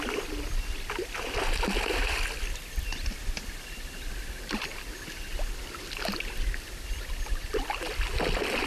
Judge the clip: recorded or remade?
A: recorded